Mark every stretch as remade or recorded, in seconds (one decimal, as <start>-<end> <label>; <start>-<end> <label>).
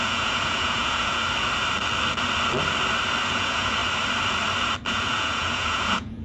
0.0-1.2 remade; 1.2-3.3 recorded; 3.3-3.8 remade; 3.8-4.9 recorded; 4.9-6.2 remade